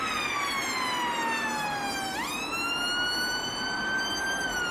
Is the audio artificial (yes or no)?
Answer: no